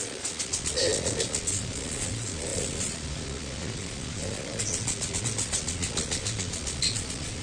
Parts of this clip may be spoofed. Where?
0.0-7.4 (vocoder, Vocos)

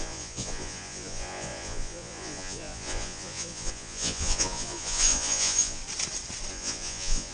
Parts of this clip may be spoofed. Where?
0.0-5.8 (vocoder, Vocos); 6.5-7.3

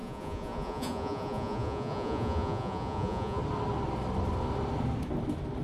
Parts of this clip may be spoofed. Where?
0.0-3.4 (vocoder, Vocos)

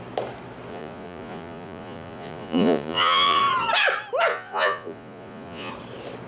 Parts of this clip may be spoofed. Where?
0.7-3.4 (vocoder, Vocos); 4.3-5.7